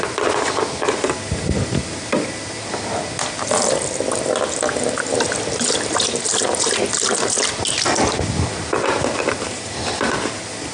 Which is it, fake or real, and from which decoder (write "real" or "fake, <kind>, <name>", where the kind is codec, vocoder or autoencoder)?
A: real